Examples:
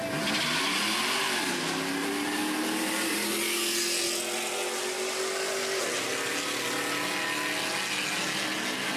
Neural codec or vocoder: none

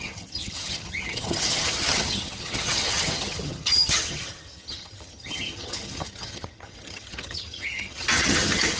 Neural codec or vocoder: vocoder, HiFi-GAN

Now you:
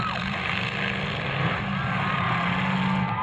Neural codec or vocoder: none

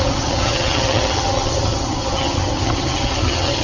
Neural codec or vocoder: vocoder, HiFi-GAN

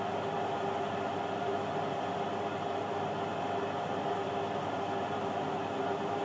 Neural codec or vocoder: none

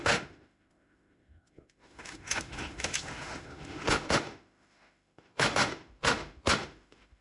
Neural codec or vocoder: autoencoder, DAC-VAE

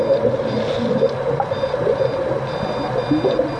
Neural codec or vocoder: none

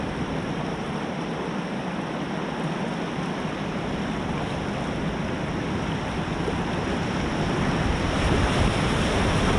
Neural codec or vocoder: none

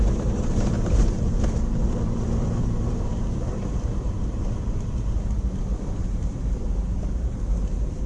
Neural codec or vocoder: vocoder, BigVGAN v2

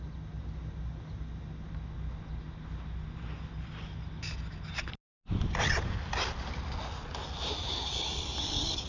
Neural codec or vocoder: none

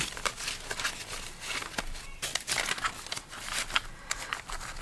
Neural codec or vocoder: none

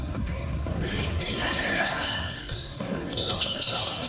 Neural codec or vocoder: codec, SNAC